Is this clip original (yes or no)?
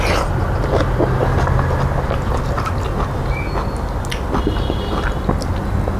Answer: yes